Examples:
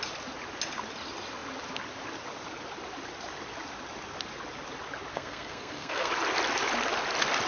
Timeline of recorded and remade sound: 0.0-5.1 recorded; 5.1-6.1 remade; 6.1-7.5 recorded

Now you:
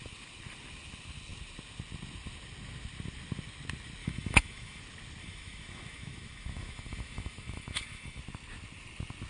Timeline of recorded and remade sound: 0.0-4.0 recorded; 4.0-4.8 remade; 4.8-5.2 recorded; 5.2-8.2 remade; 8.2-9.3 recorded

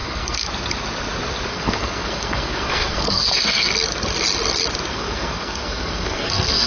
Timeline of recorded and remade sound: 0.0-0.5 remade; 0.5-1.5 recorded; 1.5-3.7 remade; 3.7-4.9 recorded; 4.9-6.7 remade

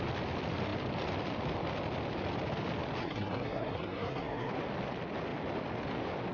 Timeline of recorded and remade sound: 0.0-3.0 recorded; 3.0-4.5 remade; 4.5-6.3 recorded

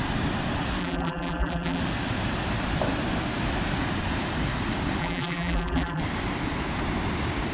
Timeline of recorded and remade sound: 0.0-0.8 recorded; 0.8-1.8 remade; 1.8-5.0 recorded; 5.0-6.0 remade; 6.0-7.5 recorded

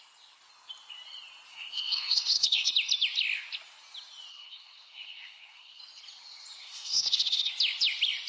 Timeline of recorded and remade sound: 0.0-1.5 recorded; 1.5-2.7 remade; 2.7-4.3 recorded; 4.3-5.8 remade; 5.8-6.6 recorded; 6.6-7.5 remade; 7.5-8.3 recorded

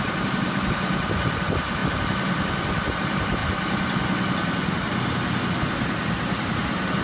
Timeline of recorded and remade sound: 0.0-1.8 remade; 1.8-2.9 recorded; 2.9-3.4 remade; 3.4-5.6 recorded; 5.6-7.0 remade